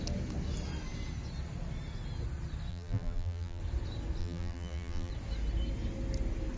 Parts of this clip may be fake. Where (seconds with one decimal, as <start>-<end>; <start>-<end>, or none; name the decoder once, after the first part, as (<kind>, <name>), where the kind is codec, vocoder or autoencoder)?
2.7-3.6 (vocoder, BigVGAN v2); 4.2-5.1

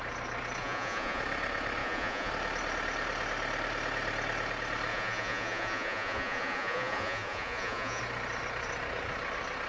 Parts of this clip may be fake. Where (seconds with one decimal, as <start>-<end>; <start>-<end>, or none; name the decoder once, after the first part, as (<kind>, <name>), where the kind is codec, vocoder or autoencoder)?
0.6-1.2 (vocoder, Vocos); 1.8-2.3; 4.9-8.0

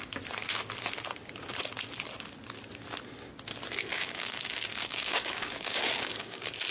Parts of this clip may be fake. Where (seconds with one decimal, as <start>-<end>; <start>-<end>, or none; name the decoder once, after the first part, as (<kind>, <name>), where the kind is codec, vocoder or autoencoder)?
3.9-6.7 (codec, DAC)

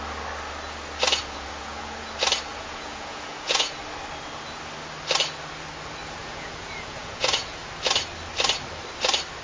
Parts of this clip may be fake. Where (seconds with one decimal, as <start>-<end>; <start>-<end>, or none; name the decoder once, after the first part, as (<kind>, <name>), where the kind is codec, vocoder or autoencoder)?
1.2-2.1 (vocoder, Vocos); 2.5-3.8; 6.2-7.6

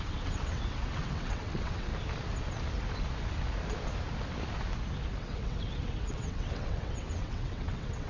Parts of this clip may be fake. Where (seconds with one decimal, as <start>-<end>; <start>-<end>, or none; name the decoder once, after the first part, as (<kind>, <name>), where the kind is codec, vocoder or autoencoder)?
0.0-1.9 (vocoder, WaveNeXt); 5.2-8.1

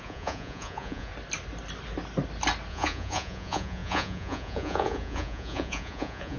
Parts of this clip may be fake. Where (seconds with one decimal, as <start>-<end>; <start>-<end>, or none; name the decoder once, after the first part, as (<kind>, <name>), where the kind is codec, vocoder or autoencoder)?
0.0-1.1 (vocoder, Vocos); 2.7-6.4